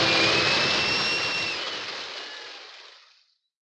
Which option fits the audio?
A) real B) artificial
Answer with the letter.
A